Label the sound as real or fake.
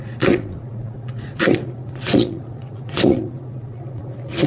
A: fake